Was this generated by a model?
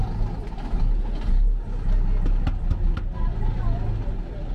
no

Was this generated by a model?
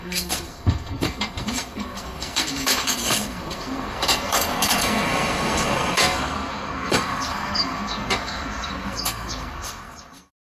yes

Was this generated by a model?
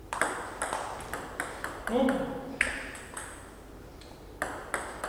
yes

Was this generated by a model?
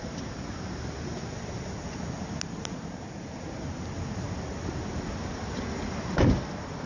no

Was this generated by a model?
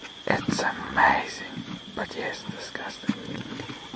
yes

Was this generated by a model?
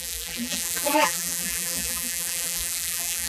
yes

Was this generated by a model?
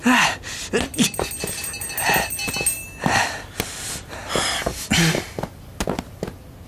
no